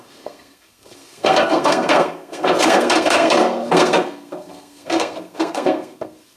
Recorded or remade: remade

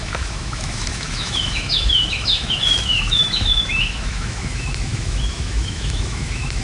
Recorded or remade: remade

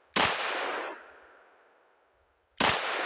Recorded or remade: recorded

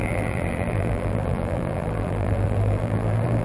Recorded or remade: remade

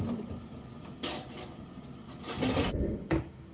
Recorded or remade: recorded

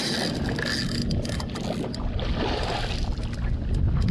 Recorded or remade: recorded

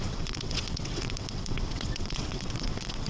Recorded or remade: remade